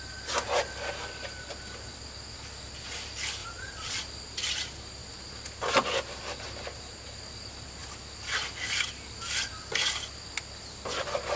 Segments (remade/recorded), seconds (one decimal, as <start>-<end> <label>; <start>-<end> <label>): 0.0-3.4 recorded; 3.4-4.0 remade; 4.0-11.4 recorded